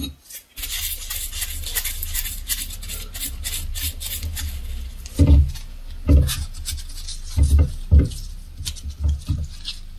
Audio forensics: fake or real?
real